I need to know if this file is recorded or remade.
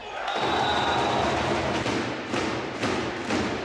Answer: recorded